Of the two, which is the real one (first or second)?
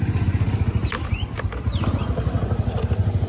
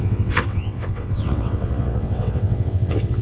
first